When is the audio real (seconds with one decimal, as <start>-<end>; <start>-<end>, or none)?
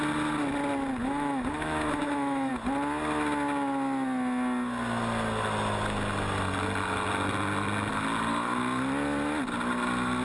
0.0-1.0; 2.5-10.2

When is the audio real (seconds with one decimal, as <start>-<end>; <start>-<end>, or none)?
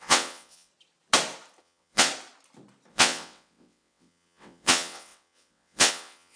0.7-1.6; 2.1-2.9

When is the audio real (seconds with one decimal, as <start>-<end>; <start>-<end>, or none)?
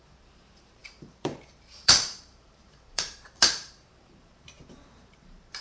none